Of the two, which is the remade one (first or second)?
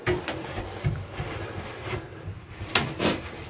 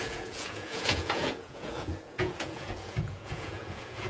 second